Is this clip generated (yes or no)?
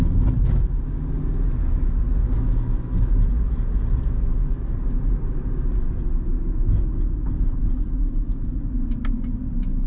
no